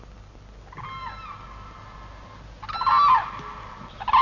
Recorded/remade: recorded